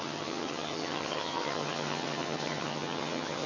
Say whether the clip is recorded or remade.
remade